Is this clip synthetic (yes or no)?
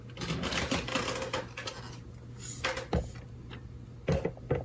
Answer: no